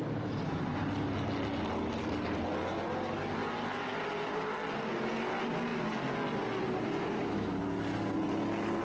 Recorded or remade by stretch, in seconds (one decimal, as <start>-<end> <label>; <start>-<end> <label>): 0.0-8.8 recorded